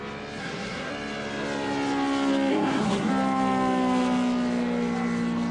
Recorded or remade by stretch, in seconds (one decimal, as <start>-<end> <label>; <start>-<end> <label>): 0.0-0.4 recorded; 0.4-0.9 remade; 0.9-2.5 recorded; 2.5-3.1 remade; 3.1-5.5 recorded